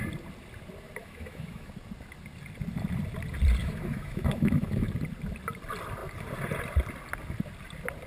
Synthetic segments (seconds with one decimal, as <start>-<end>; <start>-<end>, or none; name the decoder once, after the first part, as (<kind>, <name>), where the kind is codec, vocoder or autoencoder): 1.0-1.7 (autoencoder, DAC-VAE); 3.6-4.9